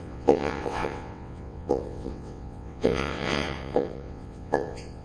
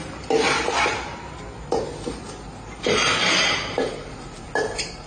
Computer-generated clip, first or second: first